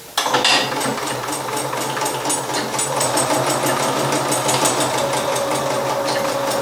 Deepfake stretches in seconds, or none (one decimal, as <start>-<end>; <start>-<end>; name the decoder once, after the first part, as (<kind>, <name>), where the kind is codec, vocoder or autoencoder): none

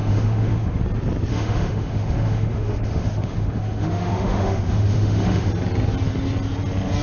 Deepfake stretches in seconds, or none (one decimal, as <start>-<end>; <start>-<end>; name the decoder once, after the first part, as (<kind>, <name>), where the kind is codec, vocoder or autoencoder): 0.0-0.8 (autoencoder, DAC-VAE); 1.3-5.5

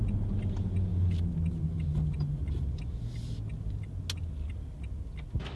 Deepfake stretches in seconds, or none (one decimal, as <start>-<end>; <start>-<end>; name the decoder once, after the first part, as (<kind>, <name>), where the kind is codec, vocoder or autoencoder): none

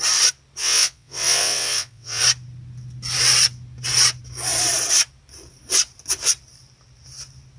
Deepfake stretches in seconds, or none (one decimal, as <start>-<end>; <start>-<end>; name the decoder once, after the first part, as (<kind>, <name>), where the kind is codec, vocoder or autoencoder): 0.6-2.2 (vocoder, WaveNeXt)

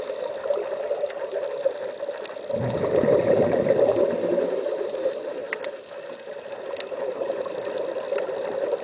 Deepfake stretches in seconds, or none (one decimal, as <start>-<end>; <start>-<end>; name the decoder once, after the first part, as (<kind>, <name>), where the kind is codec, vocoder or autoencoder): none

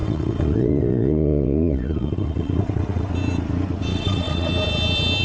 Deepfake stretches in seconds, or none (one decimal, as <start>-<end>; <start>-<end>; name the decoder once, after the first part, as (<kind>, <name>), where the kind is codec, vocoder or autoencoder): 0.0-3.1 (vocoder, WaveNeXt); 3.9-4.5

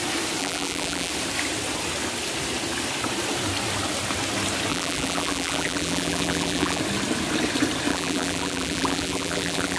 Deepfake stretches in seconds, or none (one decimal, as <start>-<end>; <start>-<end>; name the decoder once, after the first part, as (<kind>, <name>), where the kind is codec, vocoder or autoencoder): 0.4-1.1 (vocoder, BigVGAN v2); 4.7-6.8; 7.9-9.8